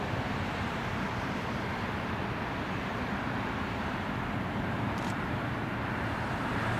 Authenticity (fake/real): fake